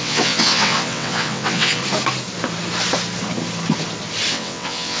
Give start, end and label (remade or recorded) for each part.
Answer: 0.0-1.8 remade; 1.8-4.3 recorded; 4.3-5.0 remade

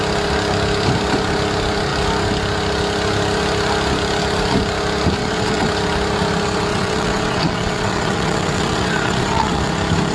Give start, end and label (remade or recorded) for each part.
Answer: 0.0-5.2 recorded; 5.2-5.7 remade; 5.7-6.7 recorded; 6.7-9.7 remade; 9.7-10.1 recorded

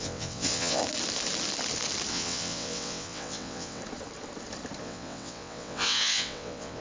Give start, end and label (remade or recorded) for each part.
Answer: 0.0-0.8 remade; 0.8-2.1 recorded; 2.1-3.8 remade; 3.8-4.8 recorded; 4.8-6.8 remade

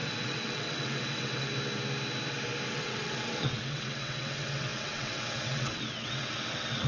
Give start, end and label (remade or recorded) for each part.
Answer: 0.0-1.5 remade; 1.5-2.7 recorded; 2.7-6.9 remade

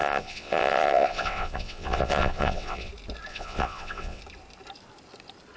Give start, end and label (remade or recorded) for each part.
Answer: 0.0-2.9 remade; 2.9-3.3 recorded; 3.3-4.2 remade; 4.2-5.6 recorded

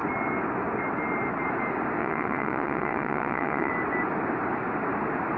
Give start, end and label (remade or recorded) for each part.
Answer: 0.0-2.0 recorded; 2.0-3.7 remade; 3.7-5.4 recorded

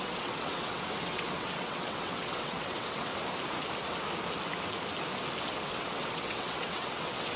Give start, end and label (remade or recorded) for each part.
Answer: 0.0-3.1 remade; 3.1-5.4 recorded; 5.4-7.4 remade